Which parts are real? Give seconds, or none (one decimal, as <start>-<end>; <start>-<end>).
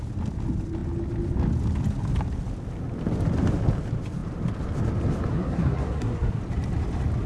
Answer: 0.0-5.3; 6.4-7.3